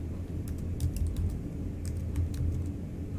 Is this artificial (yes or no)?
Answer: no